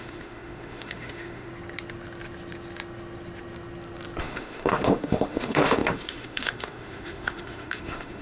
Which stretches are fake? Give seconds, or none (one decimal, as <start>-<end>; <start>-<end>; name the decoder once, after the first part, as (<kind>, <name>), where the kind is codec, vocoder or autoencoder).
0.0-1.5 (autoencoder, DAC-VAE); 4.2-8.2